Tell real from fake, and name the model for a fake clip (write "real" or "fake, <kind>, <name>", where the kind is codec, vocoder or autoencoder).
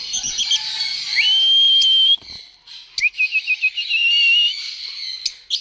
real